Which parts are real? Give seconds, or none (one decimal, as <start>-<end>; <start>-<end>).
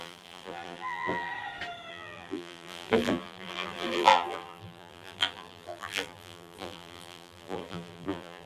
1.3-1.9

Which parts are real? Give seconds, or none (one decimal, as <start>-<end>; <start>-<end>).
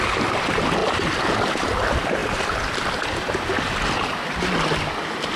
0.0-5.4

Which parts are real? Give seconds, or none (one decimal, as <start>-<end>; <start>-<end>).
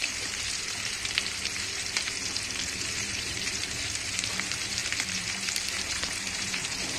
none